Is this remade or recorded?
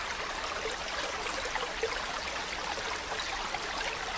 recorded